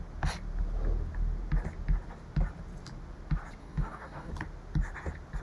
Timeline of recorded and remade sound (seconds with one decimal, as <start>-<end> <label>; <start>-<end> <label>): 0.0-3.6 recorded; 3.6-4.3 remade; 4.3-5.4 recorded